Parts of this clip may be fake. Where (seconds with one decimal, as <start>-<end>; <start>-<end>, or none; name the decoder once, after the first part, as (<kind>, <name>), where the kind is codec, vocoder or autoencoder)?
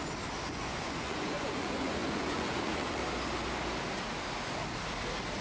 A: 0.5-3.0 (vocoder, Vocos)